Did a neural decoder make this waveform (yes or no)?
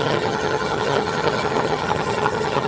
yes